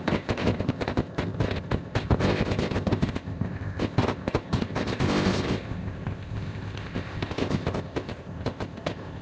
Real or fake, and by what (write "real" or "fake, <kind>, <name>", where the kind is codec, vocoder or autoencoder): fake, codec, ZipCodec